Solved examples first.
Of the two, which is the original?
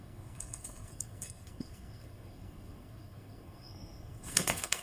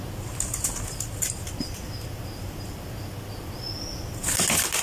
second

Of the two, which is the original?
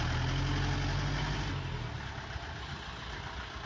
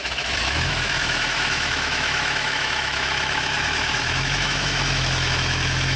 first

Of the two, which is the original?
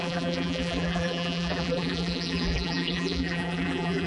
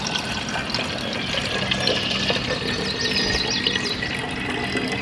second